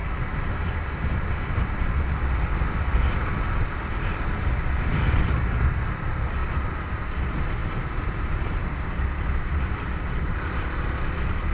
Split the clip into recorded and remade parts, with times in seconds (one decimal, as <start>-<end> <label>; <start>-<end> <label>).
0.0-6.4 remade; 6.4-7.0 recorded; 7.0-11.5 remade